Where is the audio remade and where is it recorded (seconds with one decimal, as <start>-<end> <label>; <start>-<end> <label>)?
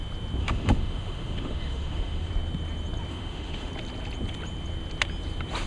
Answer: 0.0-0.4 recorded; 0.4-2.3 remade; 2.3-3.1 recorded; 3.1-3.7 remade; 3.7-5.7 recorded